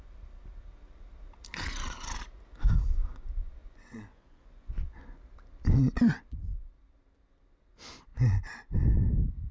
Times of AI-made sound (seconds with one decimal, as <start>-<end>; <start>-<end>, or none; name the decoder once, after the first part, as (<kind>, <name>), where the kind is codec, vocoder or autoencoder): 3.6-5.2 (vocoder, Vocos)